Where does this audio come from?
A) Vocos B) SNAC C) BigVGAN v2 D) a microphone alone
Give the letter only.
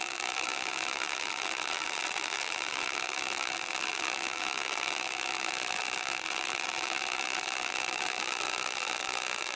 C